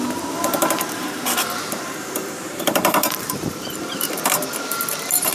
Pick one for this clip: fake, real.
fake